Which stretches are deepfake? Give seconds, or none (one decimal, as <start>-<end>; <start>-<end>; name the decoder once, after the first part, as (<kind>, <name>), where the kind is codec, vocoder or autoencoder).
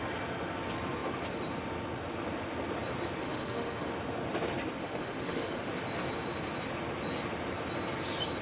3.2-3.9 (autoencoder, DAC-VAE); 4.8-5.7